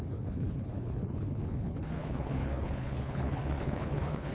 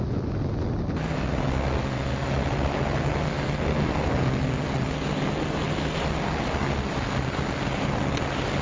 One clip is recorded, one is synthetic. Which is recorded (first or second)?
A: second